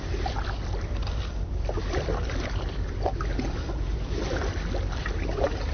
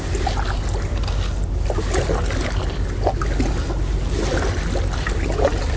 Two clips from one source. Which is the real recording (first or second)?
second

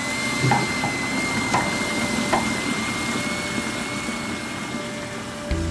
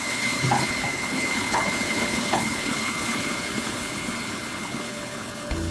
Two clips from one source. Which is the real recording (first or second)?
first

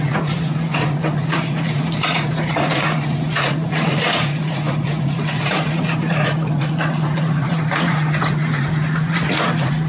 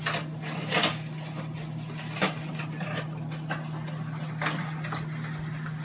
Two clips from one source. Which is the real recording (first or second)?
second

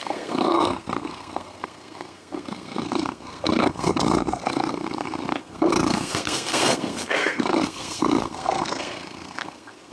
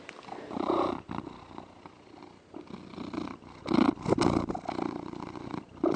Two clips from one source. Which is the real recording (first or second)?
second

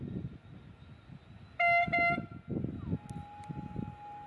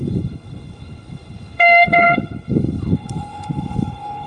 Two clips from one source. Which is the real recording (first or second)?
first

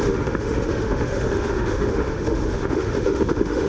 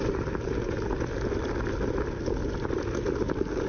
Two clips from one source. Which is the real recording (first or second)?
second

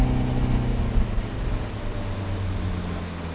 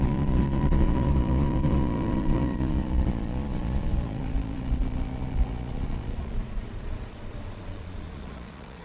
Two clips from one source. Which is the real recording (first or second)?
first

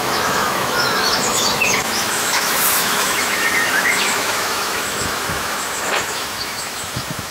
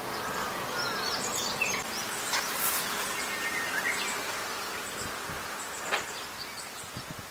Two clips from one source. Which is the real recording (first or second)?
second